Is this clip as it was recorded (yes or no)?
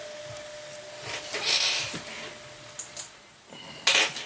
yes